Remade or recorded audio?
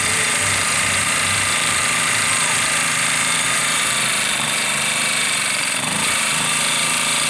remade